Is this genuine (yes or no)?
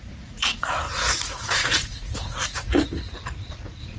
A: no